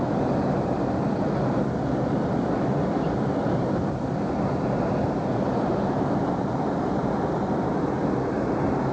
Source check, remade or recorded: recorded